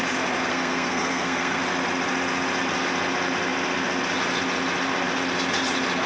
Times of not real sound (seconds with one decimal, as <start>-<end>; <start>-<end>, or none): 0.4-1.6